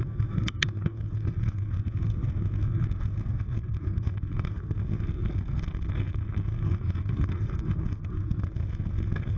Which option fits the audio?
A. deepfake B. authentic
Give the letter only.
A